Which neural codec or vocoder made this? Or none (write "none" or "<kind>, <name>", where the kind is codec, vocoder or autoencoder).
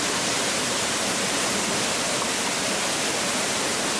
none